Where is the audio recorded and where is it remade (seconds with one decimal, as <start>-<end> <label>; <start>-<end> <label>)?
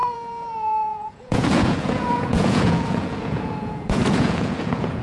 0.0-5.0 remade